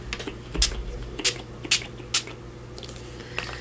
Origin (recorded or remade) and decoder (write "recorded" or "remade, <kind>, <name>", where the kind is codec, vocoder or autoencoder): recorded